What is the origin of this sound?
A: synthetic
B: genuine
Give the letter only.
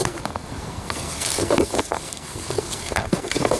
A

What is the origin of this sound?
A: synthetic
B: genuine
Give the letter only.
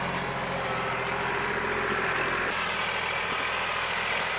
B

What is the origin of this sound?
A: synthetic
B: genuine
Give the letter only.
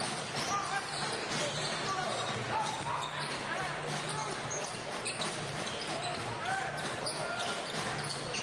A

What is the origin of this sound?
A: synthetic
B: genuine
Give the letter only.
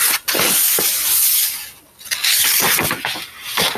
B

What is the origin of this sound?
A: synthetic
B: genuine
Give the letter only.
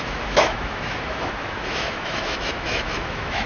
A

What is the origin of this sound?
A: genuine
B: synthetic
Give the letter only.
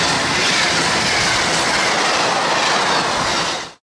A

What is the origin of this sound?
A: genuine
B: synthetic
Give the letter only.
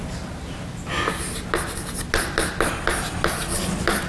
A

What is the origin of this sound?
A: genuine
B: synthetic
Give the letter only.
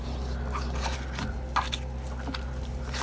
A